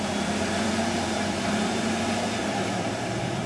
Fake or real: fake